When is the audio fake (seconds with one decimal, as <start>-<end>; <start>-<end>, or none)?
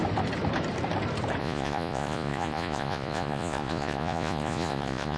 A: 1.4-5.2